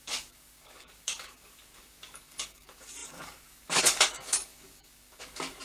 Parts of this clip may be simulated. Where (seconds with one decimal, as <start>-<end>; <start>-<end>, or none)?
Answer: 0.0-5.6